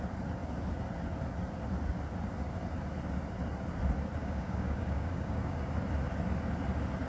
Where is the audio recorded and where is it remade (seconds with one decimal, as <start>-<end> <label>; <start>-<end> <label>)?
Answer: 0.0-4.2 recorded; 4.2-5.7 remade; 5.7-7.1 recorded